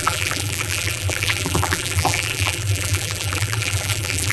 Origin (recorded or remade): remade